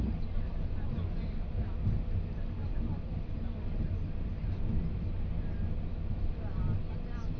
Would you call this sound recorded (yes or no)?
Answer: yes